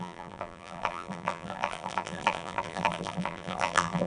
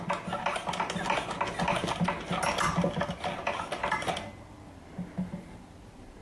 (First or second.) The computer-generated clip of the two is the first